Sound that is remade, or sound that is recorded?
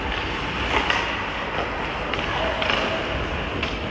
recorded